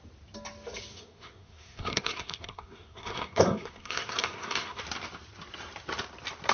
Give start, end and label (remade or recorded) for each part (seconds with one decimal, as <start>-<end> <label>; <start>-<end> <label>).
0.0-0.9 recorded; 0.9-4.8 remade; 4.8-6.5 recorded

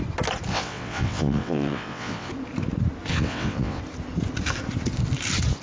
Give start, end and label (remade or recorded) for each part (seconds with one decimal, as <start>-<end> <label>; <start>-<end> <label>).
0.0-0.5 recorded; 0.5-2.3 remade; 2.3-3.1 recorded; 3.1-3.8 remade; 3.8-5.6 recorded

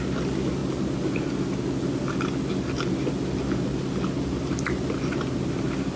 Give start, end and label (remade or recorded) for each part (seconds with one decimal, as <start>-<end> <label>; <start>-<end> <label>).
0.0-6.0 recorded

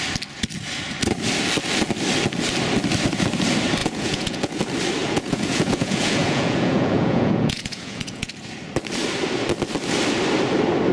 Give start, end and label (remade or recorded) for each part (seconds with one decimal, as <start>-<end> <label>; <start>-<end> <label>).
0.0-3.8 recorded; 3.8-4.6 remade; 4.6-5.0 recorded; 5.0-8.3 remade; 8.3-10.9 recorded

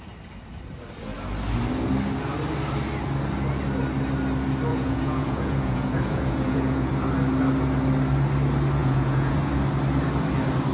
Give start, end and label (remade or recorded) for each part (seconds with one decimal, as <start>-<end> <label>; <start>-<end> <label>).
0.0-4.7 recorded; 4.7-6.9 remade; 6.9-8.8 recorded; 8.8-9.4 remade; 9.4-10.7 recorded

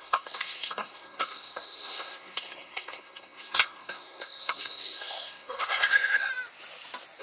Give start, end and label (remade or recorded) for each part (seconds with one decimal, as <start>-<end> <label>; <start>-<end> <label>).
0.0-6.3 remade; 6.3-7.2 recorded

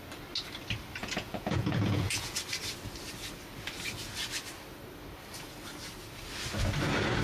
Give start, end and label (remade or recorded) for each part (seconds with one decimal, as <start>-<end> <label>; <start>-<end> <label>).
0.0-1.0 recorded; 1.0-2.4 remade; 2.4-7.2 recorded